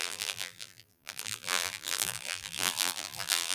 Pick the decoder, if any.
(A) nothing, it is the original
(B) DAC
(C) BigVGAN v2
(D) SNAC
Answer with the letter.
C